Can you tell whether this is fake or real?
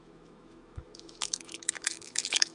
fake